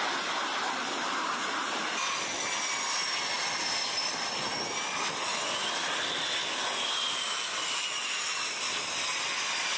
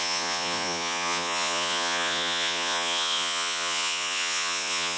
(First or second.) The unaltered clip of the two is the first